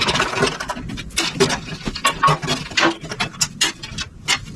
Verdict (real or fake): real